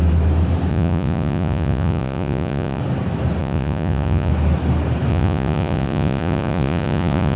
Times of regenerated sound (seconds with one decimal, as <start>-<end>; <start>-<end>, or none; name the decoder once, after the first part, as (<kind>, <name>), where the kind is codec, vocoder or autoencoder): 0.7-2.8 (vocoder, Vocos); 3.4-4.3; 5.1-7.4